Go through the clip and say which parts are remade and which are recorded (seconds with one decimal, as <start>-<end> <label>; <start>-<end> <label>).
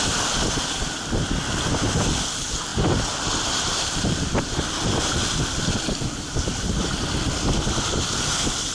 0.0-8.7 recorded